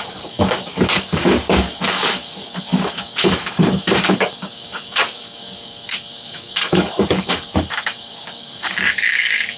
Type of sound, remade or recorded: remade